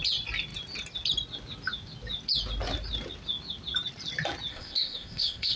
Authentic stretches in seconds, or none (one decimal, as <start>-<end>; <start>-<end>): 0.0-4.5